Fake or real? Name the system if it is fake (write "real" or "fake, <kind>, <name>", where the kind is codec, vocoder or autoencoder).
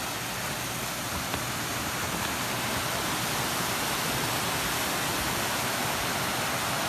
real